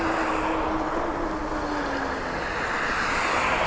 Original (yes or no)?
yes